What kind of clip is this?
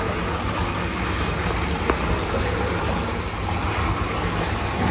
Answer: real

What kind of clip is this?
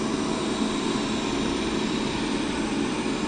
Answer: real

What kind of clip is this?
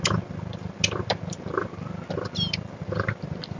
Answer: real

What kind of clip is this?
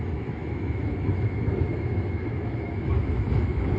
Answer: fake